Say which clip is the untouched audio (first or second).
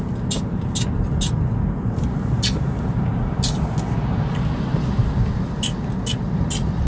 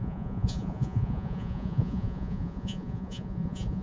first